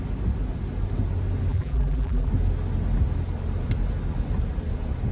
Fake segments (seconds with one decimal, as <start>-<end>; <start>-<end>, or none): 1.5-2.3